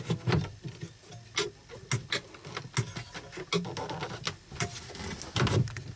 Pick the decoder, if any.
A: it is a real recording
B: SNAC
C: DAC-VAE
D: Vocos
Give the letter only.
A